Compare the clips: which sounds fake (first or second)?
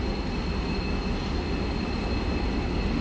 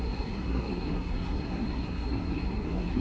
second